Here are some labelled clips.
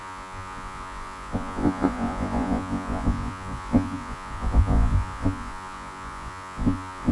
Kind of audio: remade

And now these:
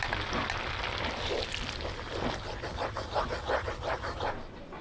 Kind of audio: recorded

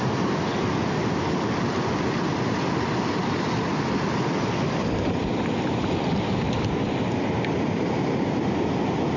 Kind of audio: recorded